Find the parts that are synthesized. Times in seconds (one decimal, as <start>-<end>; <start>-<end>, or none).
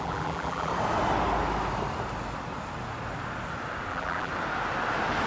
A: 0.0-0.7; 3.9-4.3